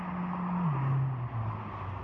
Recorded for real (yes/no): yes